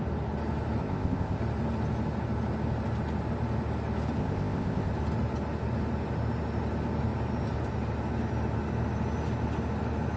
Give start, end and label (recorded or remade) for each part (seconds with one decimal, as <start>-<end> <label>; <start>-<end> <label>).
0.0-0.8 recorded; 0.8-1.4 remade; 1.4-4.2 recorded; 4.2-4.9 remade; 4.9-10.2 recorded